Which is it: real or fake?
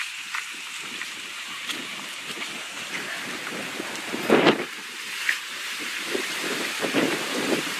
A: fake